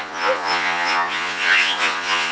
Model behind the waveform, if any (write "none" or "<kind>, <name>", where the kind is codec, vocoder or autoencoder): vocoder, Vocos